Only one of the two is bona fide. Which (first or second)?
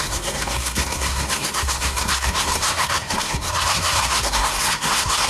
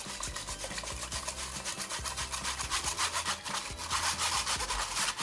second